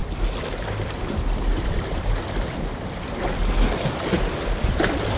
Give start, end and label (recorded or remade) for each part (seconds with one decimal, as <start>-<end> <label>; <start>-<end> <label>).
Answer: 0.0-5.2 recorded